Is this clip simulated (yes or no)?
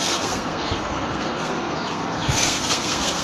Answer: yes